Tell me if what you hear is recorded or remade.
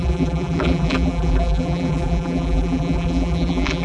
remade